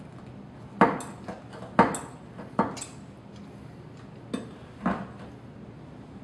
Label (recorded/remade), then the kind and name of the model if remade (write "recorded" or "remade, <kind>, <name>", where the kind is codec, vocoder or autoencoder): recorded